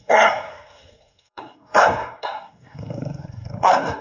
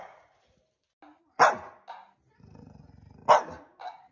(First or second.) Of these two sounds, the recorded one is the second